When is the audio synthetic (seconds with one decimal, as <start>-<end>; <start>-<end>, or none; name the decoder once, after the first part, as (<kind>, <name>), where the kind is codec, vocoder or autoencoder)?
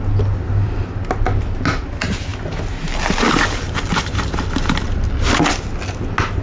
none